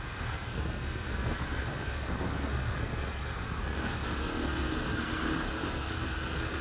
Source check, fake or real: fake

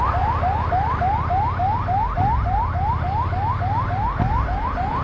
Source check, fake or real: real